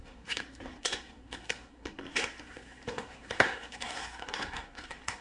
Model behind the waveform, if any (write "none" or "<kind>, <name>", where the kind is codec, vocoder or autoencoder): codec, SNAC